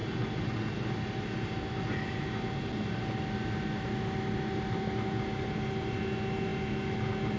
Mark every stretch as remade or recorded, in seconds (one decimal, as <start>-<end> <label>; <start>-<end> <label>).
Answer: 0.0-7.4 recorded